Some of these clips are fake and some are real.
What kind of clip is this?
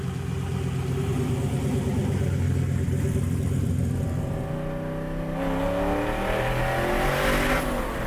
real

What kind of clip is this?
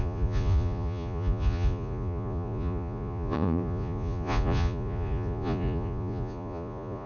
fake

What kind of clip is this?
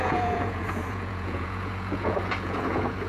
fake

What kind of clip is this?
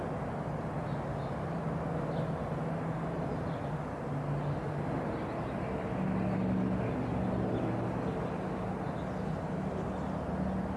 real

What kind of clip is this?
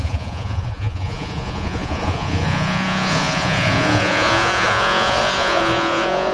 fake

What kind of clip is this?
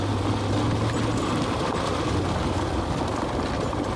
real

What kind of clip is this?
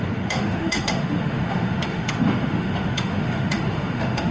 fake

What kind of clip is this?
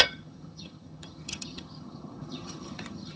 fake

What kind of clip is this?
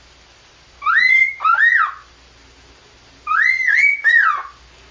real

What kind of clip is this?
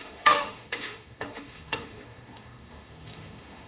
fake